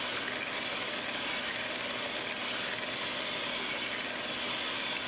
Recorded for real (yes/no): yes